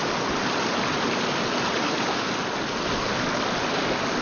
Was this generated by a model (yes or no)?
no